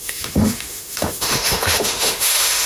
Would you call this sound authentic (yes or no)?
no